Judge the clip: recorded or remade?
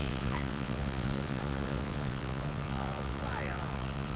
remade